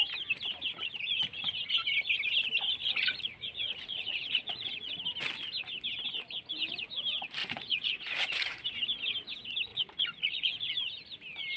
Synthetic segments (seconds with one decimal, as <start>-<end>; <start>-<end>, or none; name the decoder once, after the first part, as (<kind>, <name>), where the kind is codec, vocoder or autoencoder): 2.8-4.9 (vocoder, Vocos); 7.4-8.6; 9.7-10.6